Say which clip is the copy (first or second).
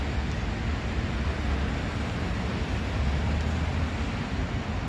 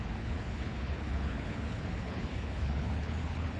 second